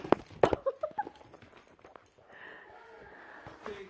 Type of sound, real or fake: real